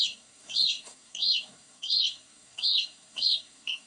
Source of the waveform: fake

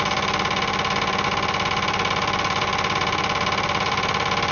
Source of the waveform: real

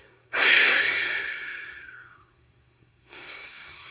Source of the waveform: fake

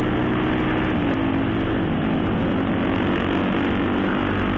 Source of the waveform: real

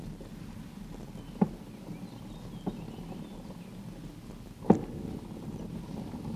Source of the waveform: real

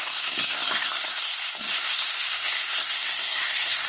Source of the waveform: fake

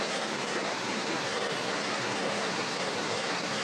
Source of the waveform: fake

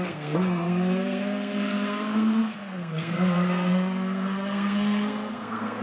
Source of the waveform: fake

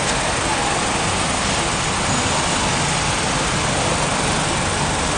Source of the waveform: real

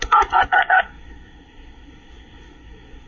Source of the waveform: fake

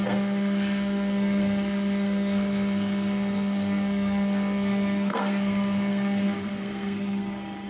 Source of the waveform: fake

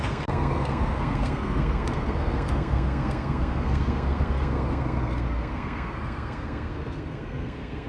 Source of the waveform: fake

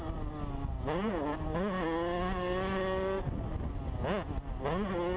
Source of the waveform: real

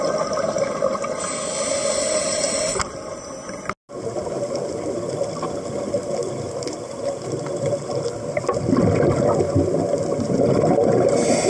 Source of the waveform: real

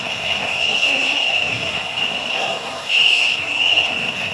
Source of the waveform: fake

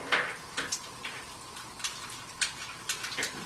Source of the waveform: real